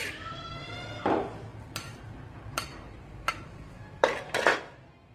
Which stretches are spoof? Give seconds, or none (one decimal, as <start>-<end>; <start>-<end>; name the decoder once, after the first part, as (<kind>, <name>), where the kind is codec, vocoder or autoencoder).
1.5-4.6 (vocoder, BigVGAN v2)